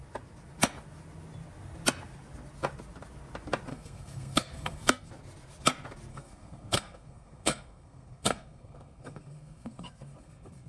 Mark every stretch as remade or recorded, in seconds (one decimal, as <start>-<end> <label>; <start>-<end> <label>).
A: 0.0-3.7 recorded; 3.7-5.1 remade; 5.1-6.1 recorded; 6.1-10.7 remade